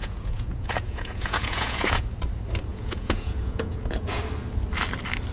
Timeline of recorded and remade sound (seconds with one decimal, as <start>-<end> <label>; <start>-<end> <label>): 0.0-2.0 remade; 2.0-2.7 recorded; 2.7-4.2 remade; 4.2-5.3 recorded